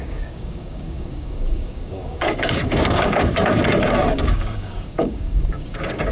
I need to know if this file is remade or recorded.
remade